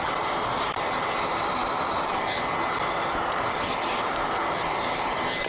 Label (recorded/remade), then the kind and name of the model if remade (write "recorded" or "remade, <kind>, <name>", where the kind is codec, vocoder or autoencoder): recorded